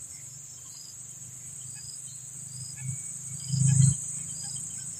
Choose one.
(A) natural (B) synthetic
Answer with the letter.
A